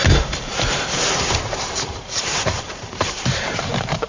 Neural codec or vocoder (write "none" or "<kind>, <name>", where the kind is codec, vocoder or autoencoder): vocoder, BigVGAN v2